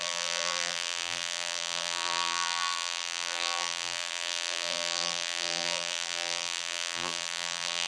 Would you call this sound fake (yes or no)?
yes